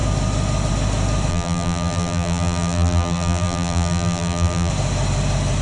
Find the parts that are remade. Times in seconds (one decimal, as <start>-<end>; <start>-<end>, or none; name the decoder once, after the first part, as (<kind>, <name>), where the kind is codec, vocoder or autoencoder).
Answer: 1.3-4.7 (vocoder, BigVGAN v2)